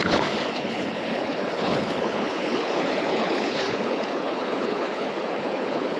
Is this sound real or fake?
fake